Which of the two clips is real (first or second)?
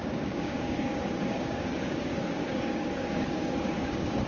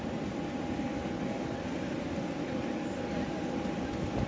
second